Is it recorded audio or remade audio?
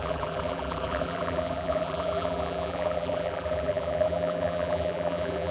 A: remade